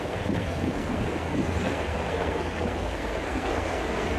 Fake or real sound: fake